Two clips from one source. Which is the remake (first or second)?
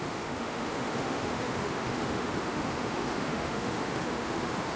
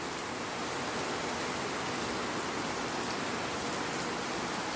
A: first